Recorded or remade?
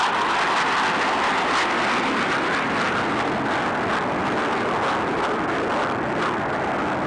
recorded